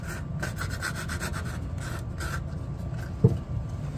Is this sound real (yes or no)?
yes